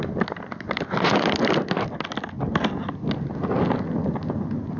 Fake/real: real